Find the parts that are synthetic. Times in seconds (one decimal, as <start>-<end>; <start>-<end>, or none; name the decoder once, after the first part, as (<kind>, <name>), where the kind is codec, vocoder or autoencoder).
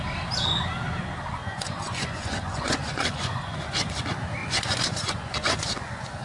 1.4-4.0 (vocoder, Vocos); 4.4-6.2